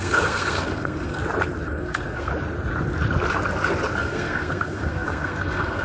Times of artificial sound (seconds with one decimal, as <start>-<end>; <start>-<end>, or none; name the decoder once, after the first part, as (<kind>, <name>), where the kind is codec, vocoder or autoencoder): 0.0-1.2 (codec, SNAC); 1.8-2.3; 4.0-5.8